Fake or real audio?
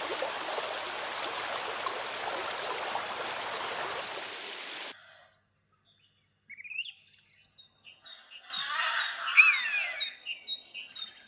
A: real